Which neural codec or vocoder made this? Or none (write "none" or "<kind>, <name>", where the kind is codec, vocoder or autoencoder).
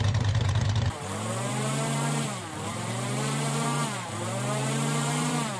vocoder, BigVGAN v2